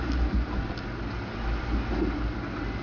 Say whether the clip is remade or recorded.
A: recorded